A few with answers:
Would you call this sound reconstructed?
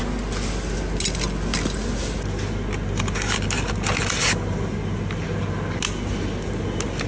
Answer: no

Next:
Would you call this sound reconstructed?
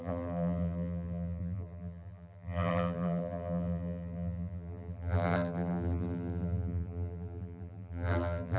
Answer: yes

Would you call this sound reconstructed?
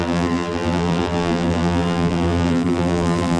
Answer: yes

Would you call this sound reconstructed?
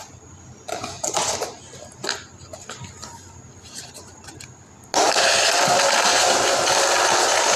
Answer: no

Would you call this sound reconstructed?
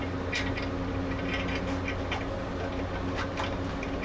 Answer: no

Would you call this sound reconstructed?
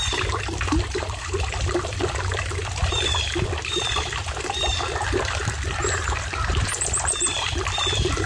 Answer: yes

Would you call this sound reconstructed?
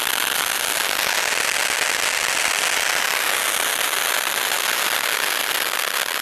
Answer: no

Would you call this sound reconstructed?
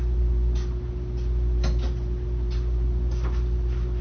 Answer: no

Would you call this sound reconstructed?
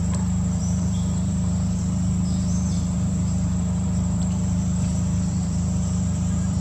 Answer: yes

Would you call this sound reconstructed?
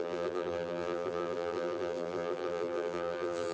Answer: yes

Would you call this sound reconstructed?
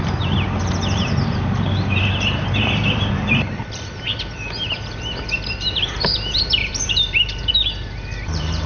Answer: yes